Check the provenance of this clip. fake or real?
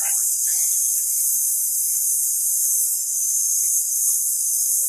real